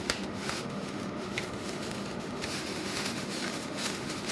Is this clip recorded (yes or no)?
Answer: no